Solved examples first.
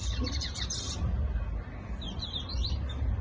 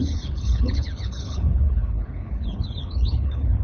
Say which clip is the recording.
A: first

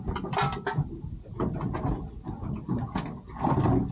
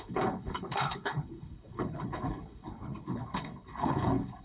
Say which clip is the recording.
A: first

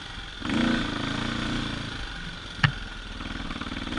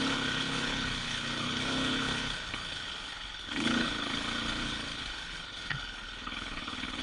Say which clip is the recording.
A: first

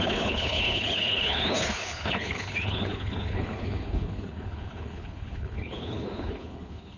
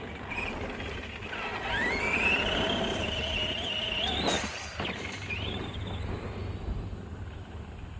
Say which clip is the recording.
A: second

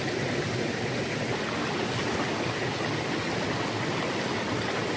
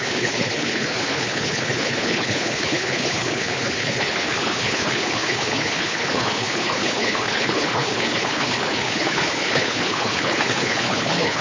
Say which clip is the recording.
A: first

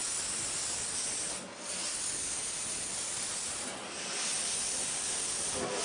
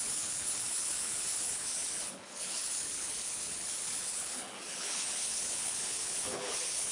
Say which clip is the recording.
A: first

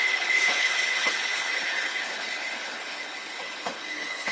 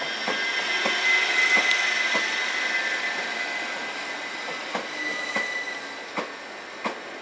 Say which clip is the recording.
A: second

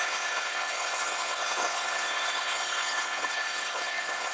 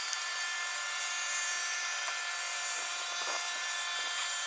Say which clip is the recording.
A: second